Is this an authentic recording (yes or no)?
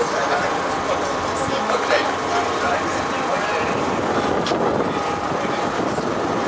yes